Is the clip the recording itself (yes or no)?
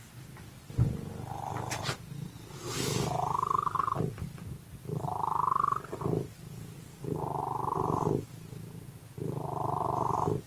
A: yes